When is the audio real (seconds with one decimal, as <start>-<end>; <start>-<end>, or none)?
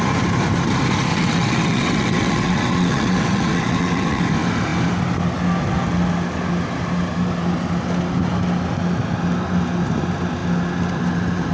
0.0-1.1; 4.2-11.5